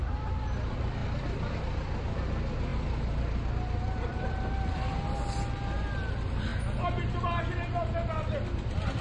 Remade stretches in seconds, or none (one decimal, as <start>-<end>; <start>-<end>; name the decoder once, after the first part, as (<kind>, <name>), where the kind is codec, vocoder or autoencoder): 1.0-1.6 (vocoder, BigVGAN v2); 2.7-3.5; 4.1-5.2